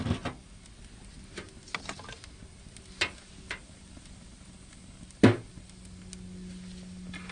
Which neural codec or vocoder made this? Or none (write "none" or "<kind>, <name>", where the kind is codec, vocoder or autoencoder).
none